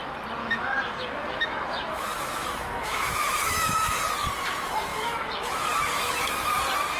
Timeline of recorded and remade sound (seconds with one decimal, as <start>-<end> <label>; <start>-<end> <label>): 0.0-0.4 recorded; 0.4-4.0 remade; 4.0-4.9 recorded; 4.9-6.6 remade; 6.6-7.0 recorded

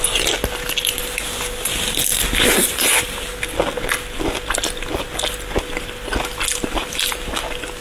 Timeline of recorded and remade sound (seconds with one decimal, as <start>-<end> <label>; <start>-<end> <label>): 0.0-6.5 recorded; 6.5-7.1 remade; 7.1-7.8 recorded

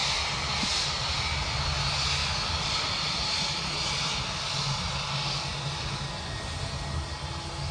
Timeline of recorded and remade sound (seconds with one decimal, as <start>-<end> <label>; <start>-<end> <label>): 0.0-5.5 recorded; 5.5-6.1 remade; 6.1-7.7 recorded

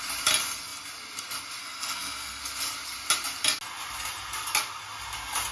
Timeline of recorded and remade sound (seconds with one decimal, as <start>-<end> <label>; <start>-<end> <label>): 0.0-1.6 recorded; 1.6-2.4 remade; 2.4-5.5 recorded

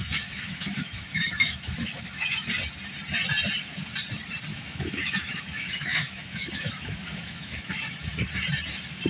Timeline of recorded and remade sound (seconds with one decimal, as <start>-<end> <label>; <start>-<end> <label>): 0.0-2.5 remade; 2.5-4.5 recorded; 4.5-8.1 remade; 8.1-9.1 recorded

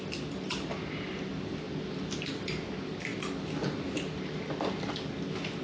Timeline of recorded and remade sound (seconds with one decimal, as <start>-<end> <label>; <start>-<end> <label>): 0.0-5.6 recorded